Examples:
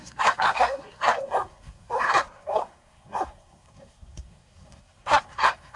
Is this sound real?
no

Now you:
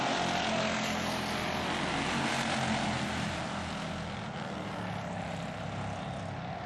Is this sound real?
yes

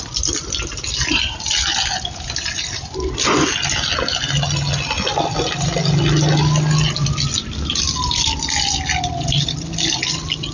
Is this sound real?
yes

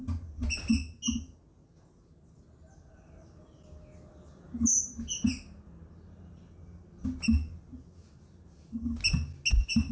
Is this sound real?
yes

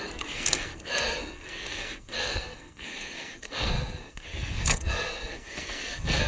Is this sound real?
no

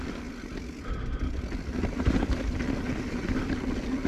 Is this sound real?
yes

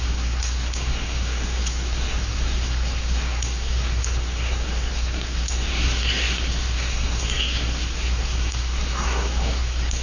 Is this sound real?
no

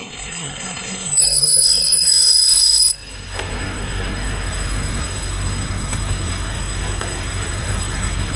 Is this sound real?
no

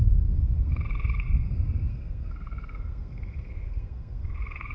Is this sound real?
no